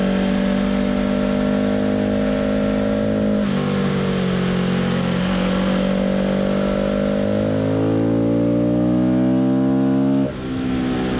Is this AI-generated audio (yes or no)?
no